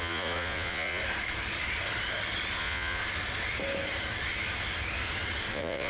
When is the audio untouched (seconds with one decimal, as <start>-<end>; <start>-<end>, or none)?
1.0-2.6; 3.0-5.5